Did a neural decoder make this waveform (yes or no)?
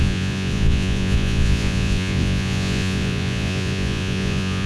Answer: yes